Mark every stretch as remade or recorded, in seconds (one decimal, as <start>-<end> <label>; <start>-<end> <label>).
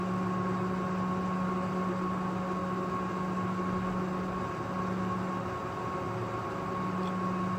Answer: 0.0-7.6 recorded